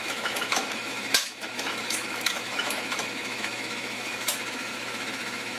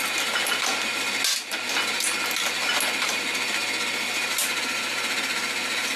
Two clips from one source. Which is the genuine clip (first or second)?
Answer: second